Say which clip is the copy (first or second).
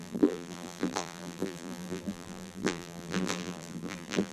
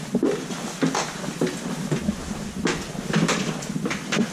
first